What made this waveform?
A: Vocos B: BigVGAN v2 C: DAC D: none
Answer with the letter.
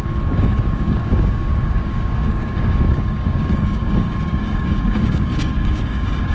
C